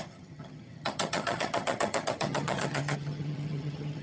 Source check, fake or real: fake